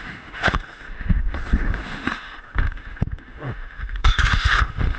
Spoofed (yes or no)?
yes